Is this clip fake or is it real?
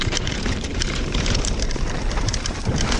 fake